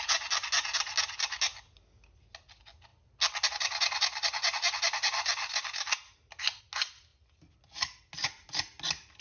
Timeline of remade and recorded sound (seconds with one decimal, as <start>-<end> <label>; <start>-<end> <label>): 0.0-9.2 recorded